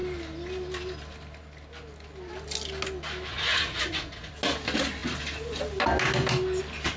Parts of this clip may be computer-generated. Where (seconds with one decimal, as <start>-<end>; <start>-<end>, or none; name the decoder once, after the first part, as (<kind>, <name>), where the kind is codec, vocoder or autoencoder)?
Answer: 3.3-4.3 (vocoder, Vocos)